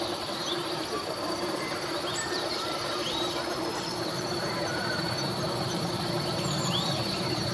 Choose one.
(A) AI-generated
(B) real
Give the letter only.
A